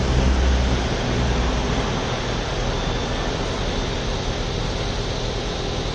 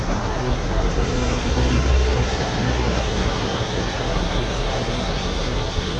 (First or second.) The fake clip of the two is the second